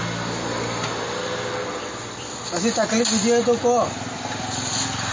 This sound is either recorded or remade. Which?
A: recorded